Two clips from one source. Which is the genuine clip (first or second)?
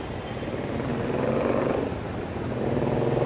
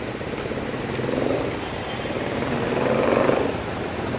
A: first